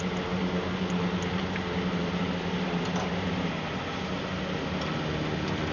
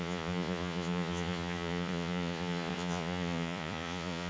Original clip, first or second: first